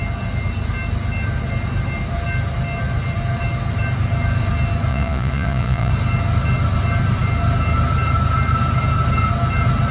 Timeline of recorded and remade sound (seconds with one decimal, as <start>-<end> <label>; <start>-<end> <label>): 0.0-4.9 recorded; 4.9-5.9 remade; 5.9-9.9 recorded